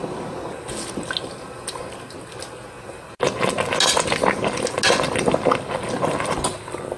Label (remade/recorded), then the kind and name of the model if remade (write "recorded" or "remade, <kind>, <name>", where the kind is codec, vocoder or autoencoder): recorded